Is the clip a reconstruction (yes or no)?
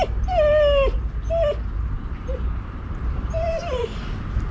no